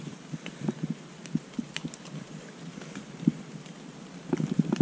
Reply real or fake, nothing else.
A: fake